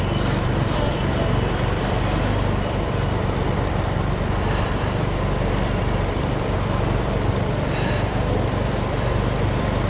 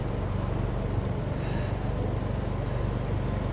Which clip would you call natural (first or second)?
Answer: second